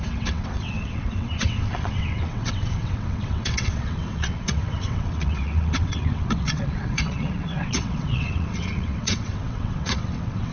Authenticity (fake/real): fake